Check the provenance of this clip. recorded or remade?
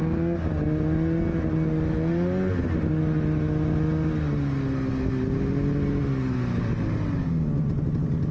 recorded